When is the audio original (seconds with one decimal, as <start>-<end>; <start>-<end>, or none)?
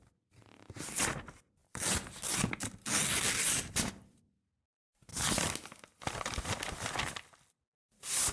0.0-8.3